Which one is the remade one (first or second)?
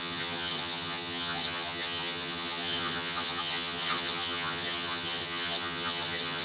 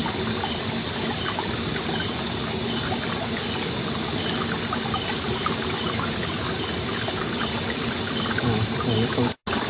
first